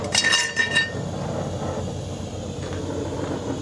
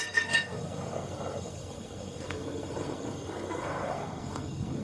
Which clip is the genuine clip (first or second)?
first